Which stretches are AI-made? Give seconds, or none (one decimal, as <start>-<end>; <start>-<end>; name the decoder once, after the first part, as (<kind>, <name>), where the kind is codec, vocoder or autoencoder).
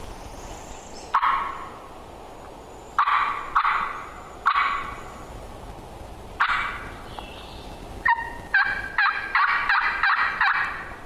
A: none